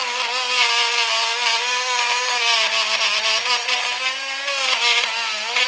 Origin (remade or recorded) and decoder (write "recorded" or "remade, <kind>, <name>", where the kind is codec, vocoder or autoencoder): recorded